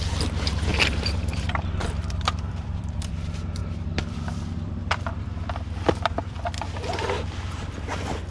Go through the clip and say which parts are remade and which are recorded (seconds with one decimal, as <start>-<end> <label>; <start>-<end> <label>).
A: 0.0-0.7 recorded; 0.7-3.1 remade; 3.1-3.6 recorded; 3.6-6.4 remade; 6.4-8.3 recorded